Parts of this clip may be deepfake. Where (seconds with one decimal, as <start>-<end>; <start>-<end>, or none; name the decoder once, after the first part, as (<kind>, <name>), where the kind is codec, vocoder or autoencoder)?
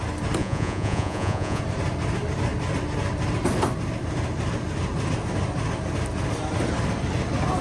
0.4-1.6 (vocoder, Vocos)